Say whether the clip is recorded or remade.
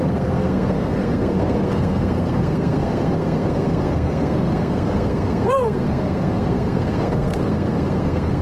remade